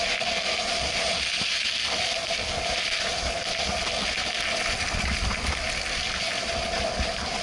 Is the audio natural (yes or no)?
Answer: yes